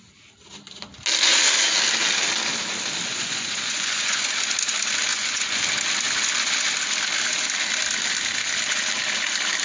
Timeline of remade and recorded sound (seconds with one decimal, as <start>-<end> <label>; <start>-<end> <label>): 0.0-3.1 recorded; 3.1-4.3 remade; 4.3-5.1 recorded; 5.1-5.6 remade; 5.6-9.6 recorded